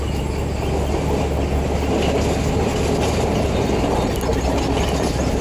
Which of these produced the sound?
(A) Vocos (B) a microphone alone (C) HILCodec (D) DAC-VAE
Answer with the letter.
B